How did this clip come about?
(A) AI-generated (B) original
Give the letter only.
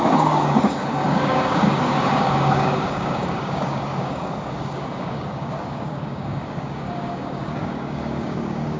A